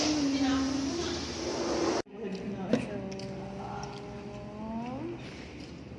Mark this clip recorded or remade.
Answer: recorded